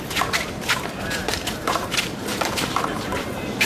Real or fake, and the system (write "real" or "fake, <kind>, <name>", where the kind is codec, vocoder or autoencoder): fake, vocoder, BigVGAN v2